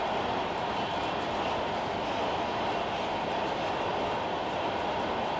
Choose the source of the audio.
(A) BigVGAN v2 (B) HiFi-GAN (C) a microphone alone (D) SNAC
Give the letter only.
C